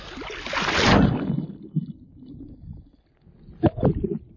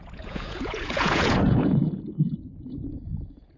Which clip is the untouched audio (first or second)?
first